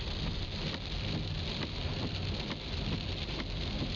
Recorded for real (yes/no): yes